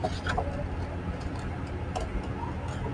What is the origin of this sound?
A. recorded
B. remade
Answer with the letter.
A